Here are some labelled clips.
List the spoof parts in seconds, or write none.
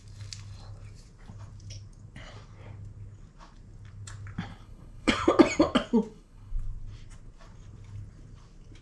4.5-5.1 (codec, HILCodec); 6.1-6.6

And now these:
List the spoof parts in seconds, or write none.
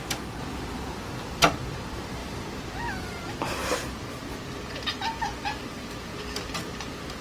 0.0-3.6 (vocoder, BigVGAN v2); 5.6-6.1